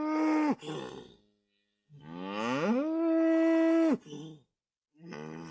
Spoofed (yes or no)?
no